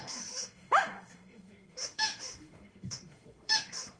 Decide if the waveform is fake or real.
fake